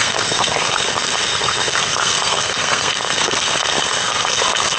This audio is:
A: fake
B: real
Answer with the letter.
A